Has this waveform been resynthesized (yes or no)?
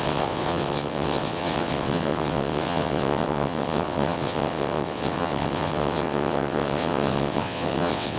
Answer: yes